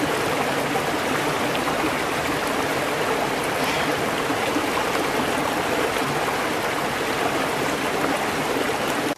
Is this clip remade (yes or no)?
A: no